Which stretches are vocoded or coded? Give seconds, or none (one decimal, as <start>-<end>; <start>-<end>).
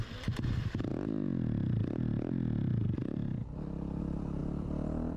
0.0-0.9; 4.0-5.2